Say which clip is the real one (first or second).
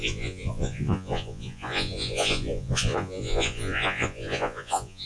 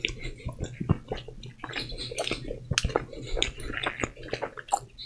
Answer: second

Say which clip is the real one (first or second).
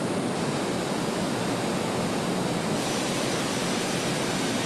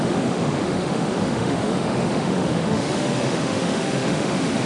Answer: first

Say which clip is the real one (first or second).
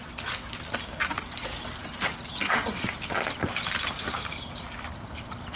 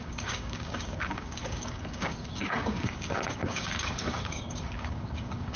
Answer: first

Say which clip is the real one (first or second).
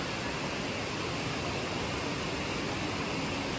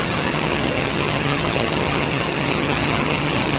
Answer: first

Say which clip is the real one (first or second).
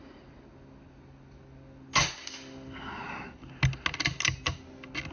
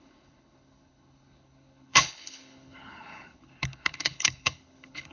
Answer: first